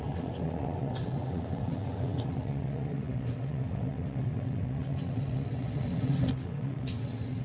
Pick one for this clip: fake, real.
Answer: fake